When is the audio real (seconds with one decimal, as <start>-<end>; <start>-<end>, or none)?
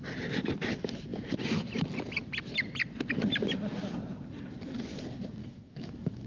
0.0-5.4